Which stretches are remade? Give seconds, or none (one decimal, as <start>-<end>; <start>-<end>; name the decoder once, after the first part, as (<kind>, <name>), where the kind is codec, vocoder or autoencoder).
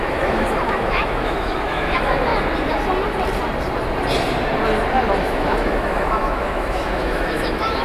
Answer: 0.0-2.3 (autoencoder, DAC-VAE); 5.2-7.8